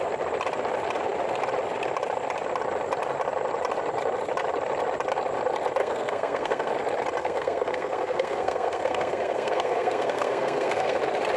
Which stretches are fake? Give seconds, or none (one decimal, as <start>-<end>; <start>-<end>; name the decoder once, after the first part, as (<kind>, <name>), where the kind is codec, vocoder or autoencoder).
5.8-6.7 (codec, SNAC); 7.2-11.0